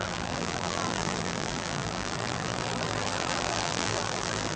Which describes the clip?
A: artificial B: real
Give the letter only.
A